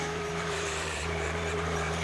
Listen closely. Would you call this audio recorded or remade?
remade